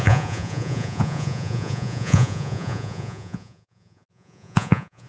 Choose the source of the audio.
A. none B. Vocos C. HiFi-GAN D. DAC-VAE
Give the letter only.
B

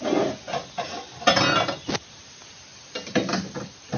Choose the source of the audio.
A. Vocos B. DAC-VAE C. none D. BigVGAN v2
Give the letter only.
C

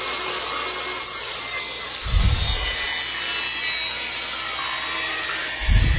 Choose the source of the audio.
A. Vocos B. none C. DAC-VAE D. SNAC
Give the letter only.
B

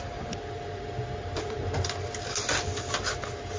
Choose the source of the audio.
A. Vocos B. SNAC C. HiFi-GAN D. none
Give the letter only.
D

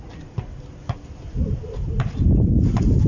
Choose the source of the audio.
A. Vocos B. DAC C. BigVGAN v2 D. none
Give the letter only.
D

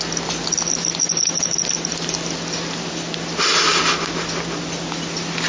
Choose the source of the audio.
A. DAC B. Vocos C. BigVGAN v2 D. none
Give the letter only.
D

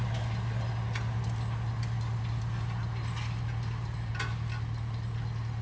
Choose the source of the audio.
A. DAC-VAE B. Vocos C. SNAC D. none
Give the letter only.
D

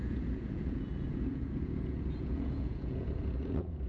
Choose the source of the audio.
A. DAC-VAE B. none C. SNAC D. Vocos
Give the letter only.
D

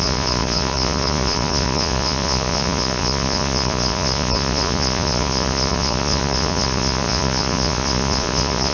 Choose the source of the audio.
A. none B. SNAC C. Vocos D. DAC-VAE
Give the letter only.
C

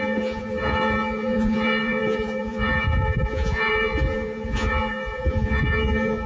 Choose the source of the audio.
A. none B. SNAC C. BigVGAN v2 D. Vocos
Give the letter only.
D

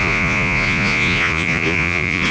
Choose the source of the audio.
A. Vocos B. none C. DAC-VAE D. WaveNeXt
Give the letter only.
A